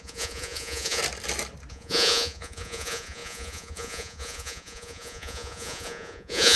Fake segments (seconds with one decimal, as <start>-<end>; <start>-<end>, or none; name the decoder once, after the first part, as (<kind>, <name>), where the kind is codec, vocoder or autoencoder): 0.0-1.0 (vocoder, Vocos); 1.7-6.6